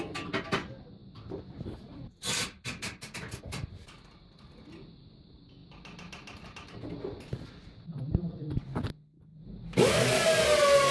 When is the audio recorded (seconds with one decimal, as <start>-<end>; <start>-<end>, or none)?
0.0-1.0; 3.4-10.9